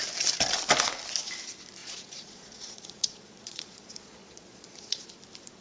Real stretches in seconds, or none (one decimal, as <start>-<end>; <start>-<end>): 0.0-1.8; 5.0-5.6